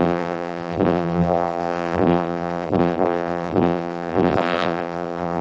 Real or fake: fake